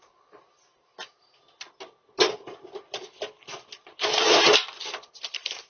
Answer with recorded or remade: recorded